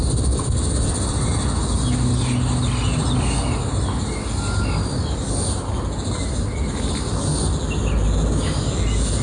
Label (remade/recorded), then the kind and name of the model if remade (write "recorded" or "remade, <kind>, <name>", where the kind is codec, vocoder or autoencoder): recorded